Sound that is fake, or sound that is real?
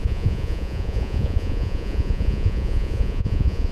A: fake